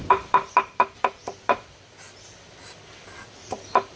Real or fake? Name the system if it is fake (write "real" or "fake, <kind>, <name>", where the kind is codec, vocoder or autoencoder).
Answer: fake, vocoder, BigVGAN v2